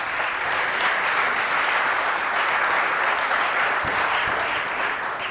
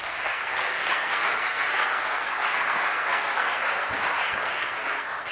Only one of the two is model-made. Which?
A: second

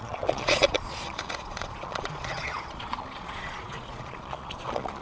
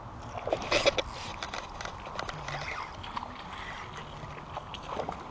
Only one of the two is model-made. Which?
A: first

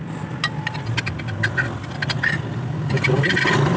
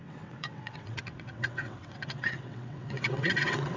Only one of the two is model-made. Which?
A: second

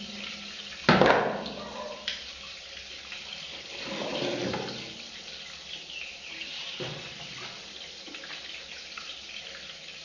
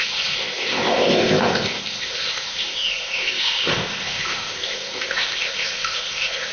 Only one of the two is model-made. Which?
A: second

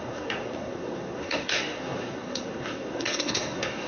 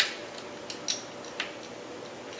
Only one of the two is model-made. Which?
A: first